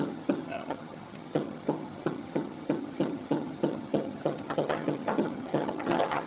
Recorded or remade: remade